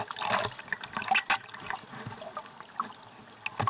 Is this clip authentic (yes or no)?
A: yes